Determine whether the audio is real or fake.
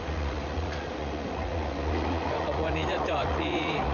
fake